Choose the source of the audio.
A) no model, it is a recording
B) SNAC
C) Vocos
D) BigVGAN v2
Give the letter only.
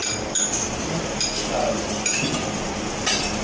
A